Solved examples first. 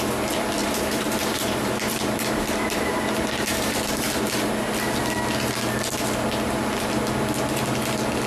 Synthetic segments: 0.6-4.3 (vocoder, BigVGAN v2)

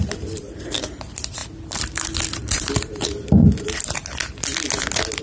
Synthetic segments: 0.0-1.4 (vocoder, BigVGAN v2); 2.4-3.4